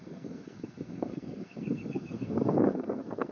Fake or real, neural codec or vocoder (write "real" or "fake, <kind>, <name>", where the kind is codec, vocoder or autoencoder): fake, codec, SNAC